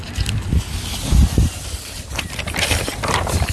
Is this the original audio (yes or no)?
yes